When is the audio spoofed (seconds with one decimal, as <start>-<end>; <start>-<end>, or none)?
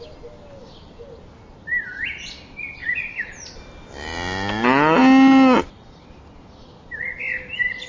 none